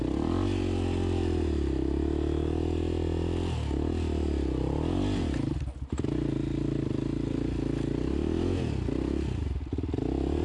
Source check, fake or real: real